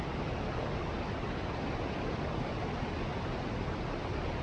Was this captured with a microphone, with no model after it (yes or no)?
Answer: yes